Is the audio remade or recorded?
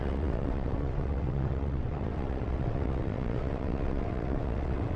remade